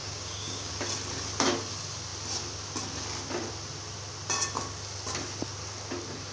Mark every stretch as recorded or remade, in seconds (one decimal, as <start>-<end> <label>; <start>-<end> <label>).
0.0-0.7 remade; 0.7-6.3 recorded